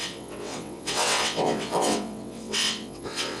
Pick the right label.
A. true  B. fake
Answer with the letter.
B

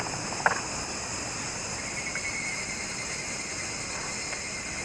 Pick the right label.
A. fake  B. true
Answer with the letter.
B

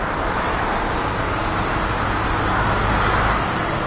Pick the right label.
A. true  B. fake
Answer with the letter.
A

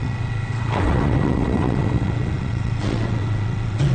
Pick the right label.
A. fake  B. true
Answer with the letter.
A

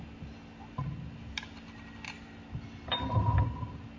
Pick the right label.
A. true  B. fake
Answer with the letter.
A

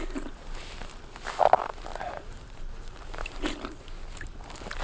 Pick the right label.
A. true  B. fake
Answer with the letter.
A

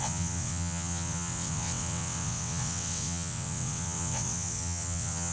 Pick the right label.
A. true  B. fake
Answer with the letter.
B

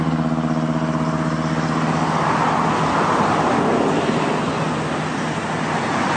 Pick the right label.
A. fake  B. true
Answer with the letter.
B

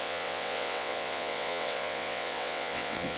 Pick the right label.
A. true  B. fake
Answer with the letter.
B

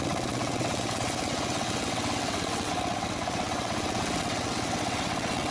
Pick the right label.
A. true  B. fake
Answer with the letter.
B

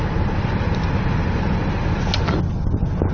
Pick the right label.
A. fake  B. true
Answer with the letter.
B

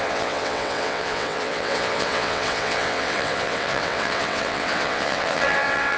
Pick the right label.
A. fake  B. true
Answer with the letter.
A